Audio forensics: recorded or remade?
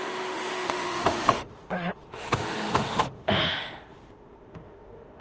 remade